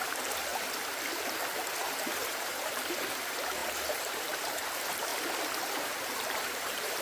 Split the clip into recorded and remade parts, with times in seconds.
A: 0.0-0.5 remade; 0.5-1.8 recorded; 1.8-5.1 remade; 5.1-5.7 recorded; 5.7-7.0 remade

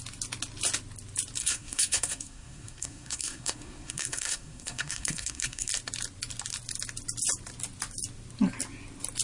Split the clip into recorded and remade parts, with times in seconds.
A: 0.0-1.4 recorded; 1.4-5.7 remade; 5.7-9.2 recorded

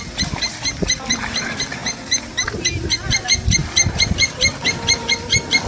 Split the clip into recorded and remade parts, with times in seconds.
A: 0.0-5.7 recorded

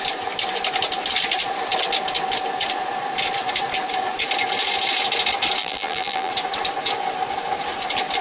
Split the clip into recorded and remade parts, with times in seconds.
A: 0.0-5.6 recorded; 5.6-6.3 remade; 6.3-8.2 recorded